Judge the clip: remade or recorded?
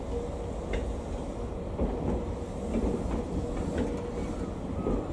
recorded